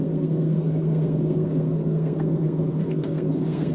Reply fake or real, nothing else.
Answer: fake